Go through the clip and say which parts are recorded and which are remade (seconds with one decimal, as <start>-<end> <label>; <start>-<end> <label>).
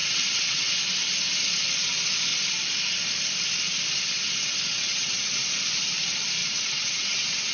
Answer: 0.0-0.8 remade; 0.8-4.7 recorded; 4.7-5.5 remade; 5.5-6.4 recorded; 6.4-7.5 remade